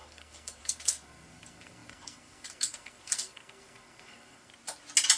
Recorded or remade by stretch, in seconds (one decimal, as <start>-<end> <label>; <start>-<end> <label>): 0.0-4.5 remade; 4.5-5.2 recorded